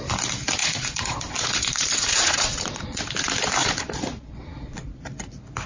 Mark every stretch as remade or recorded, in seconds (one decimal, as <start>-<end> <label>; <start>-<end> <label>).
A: 0.0-0.6 recorded; 0.6-3.0 remade; 3.0-3.6 recorded; 3.6-5.0 remade; 5.0-5.7 recorded